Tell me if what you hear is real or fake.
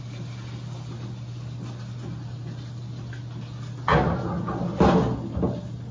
real